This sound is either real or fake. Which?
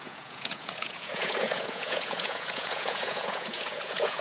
fake